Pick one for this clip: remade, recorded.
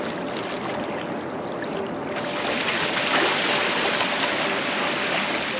recorded